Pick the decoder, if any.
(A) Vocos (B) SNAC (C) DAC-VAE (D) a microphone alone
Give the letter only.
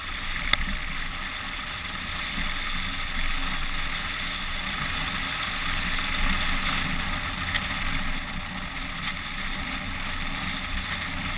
D